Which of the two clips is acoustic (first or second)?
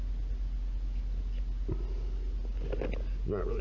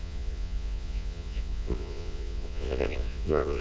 first